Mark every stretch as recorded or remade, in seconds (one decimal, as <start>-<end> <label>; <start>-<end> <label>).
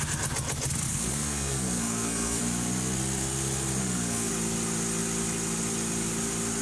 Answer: 0.0-0.9 recorded; 0.9-2.4 remade; 2.4-3.8 recorded; 3.8-4.3 remade; 4.3-6.6 recorded